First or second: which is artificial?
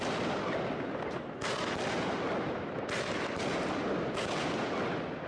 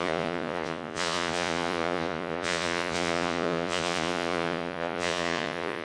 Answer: second